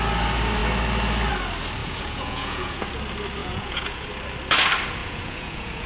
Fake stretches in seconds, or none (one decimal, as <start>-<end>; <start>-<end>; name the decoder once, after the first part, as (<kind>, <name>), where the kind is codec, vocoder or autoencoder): 1.8-2.9 (vocoder, Vocos); 3.4-4.1; 5.0-5.9